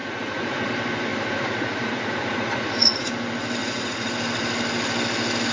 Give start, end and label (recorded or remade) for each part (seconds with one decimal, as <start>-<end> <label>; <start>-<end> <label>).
0.0-0.7 remade; 0.7-1.1 recorded; 1.1-3.1 remade; 3.1-3.6 recorded; 3.6-4.1 remade; 4.1-5.5 recorded